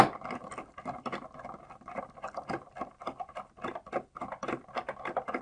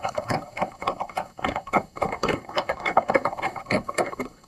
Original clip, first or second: first